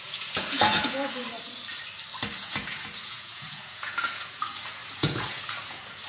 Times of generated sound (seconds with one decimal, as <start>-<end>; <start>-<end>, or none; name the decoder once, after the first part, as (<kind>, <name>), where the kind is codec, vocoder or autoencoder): 0.0-1.2 (vocoder, Vocos); 2.4-6.1